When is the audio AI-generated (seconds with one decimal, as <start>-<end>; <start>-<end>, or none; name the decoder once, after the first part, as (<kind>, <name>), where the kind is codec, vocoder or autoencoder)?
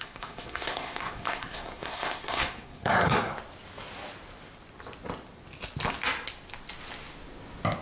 0.0-3.3 (codec, SNAC)